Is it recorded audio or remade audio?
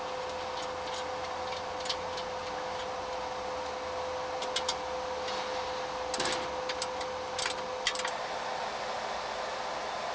recorded